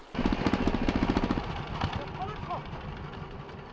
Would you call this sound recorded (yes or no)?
yes